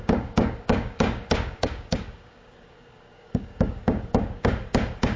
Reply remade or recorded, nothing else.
remade